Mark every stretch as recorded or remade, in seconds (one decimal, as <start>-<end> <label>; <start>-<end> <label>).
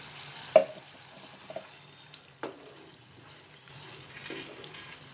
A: 0.0-5.1 recorded